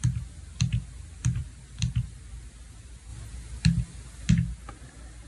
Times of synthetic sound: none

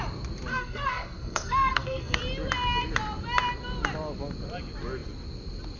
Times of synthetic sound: 0.5-2.2

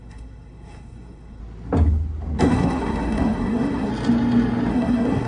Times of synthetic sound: 0.0-1.4; 2.4-3.9; 4.7-5.3

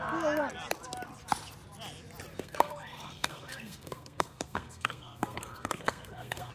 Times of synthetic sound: 2.3-6.5

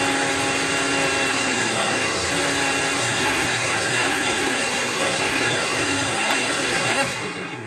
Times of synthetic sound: 1.3-2.3; 3.0-7.7

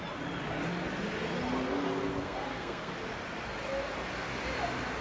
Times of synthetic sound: 2.1-2.9

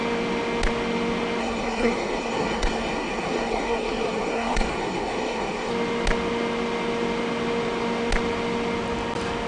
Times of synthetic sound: 1.4-5.7

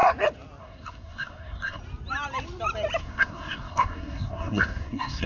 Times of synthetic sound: 0.6-1.8; 3.0-5.3